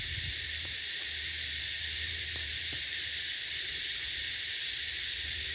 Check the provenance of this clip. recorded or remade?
remade